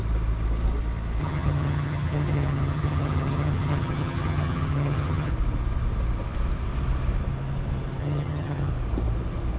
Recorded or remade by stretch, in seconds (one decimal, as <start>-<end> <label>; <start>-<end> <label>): 0.0-1.2 recorded; 1.2-5.3 remade; 5.3-8.0 recorded; 8.0-8.7 remade; 8.7-9.6 recorded